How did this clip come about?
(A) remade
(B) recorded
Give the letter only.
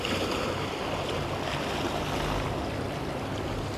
B